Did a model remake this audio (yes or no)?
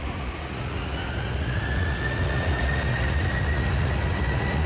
yes